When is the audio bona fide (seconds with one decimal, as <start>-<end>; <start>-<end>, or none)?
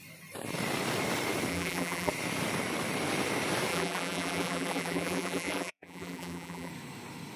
0.0-1.5; 2.1-3.7; 6.7-7.4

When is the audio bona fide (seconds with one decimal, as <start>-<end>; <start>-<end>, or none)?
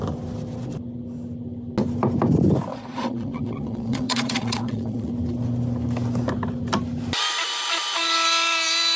0.0-2.7; 5.1-9.0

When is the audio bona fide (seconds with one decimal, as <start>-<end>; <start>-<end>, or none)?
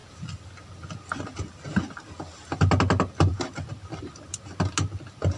0.0-5.4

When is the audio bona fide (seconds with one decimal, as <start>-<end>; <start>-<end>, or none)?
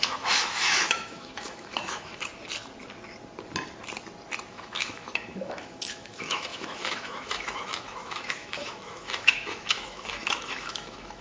2.1-4.5